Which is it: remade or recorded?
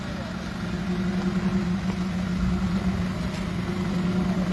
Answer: recorded